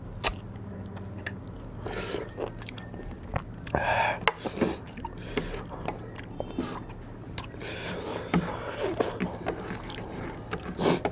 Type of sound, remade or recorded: recorded